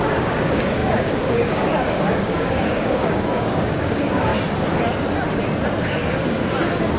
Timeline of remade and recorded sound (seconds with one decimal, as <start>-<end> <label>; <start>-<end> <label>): 0.0-4.3 remade; 4.3-7.0 recorded